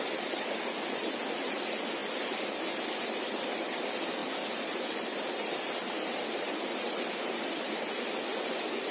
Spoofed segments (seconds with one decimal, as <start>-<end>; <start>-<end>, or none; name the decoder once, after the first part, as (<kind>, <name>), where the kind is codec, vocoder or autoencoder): 2.0-3.3 (vocoder, BigVGAN v2); 4.2-6.4